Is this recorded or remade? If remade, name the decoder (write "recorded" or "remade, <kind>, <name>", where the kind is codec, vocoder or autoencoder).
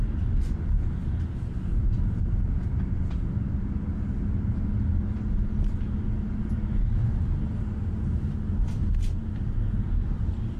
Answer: recorded